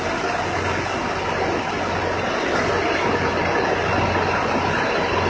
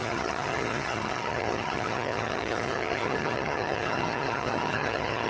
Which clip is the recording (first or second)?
first